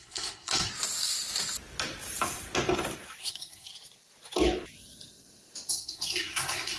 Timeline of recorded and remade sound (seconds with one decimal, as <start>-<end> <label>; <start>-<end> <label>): 0.0-0.7 remade; 0.7-3.2 recorded; 3.2-3.7 remade; 3.7-5.7 recorded; 5.7-6.8 remade